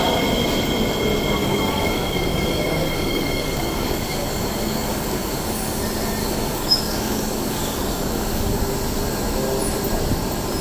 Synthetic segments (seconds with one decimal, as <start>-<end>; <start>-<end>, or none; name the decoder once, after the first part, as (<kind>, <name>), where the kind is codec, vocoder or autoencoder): 1.4-5.8 (codec, DAC); 6.2-8.6